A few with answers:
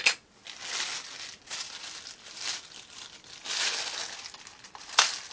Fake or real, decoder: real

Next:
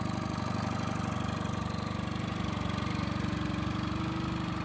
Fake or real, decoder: real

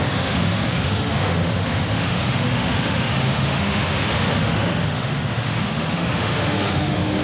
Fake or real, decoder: fake, autoencoder, DAC-VAE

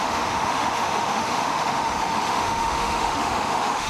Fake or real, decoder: fake, autoencoder, DAC-VAE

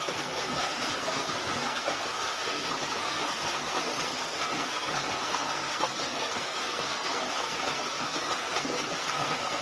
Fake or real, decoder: fake, codec, SNAC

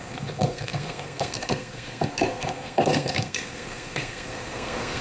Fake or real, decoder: fake, codec, SNAC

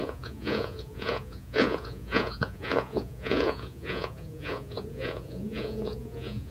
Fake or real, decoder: fake, vocoder, Vocos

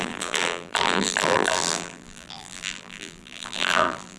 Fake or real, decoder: fake, vocoder, BigVGAN v2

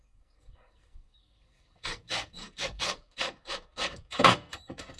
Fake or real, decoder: fake, codec, SNAC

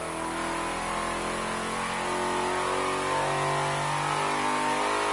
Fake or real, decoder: real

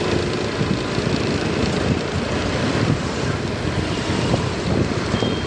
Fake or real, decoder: fake, vocoder, BigVGAN v2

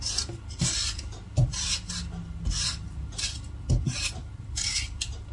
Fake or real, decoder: real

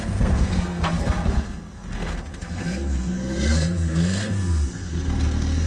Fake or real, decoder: fake, codec, SNAC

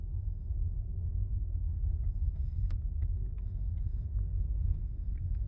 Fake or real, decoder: fake, codec, SNAC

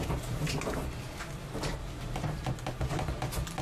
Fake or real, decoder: real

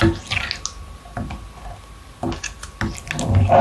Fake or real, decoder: real